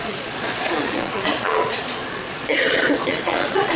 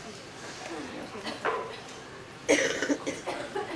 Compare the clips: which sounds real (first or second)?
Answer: second